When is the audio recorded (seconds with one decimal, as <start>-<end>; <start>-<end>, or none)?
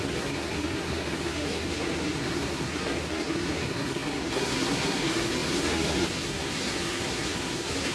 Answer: none